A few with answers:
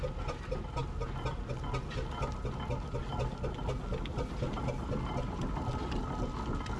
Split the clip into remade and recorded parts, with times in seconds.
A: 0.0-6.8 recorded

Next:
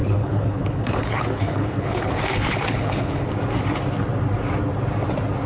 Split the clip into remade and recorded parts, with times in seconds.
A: 0.0-3.3 remade; 3.3-5.5 recorded

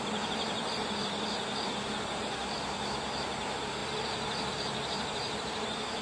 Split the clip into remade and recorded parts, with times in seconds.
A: 0.0-6.0 remade

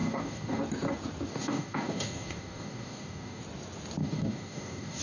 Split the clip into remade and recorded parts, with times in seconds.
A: 0.0-0.6 remade; 0.6-1.3 recorded; 1.3-3.4 remade; 3.4-4.0 recorded; 4.0-5.0 remade

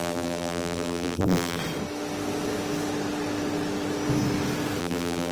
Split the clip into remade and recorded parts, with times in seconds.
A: 0.0-1.6 remade; 1.6-4.8 recorded; 4.8-5.3 remade

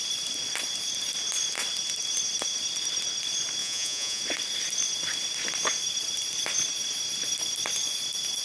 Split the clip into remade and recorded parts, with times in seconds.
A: 0.0-3.6 recorded; 3.6-4.2 remade; 4.2-8.4 recorded

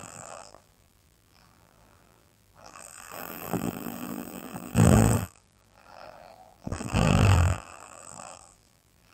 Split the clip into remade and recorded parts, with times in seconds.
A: 0.0-9.1 remade